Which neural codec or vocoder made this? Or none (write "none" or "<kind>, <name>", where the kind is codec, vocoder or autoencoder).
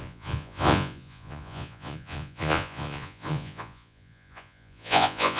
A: vocoder, Vocos